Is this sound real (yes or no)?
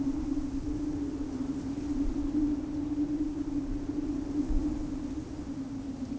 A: yes